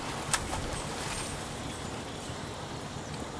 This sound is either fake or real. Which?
real